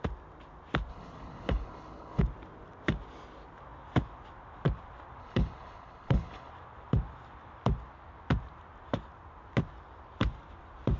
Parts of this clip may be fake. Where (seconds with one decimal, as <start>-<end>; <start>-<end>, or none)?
0.9-2.2; 5.2-6.5